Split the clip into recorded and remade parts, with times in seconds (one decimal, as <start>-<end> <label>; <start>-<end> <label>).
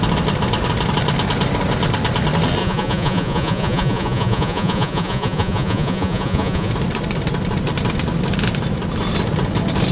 0.0-2.6 recorded; 2.6-6.7 remade; 6.7-9.9 recorded